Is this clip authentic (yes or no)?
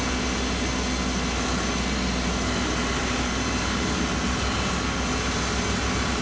yes